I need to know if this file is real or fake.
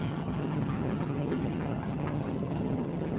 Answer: fake